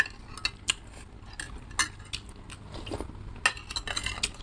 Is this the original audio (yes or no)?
yes